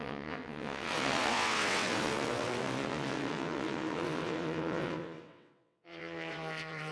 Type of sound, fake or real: fake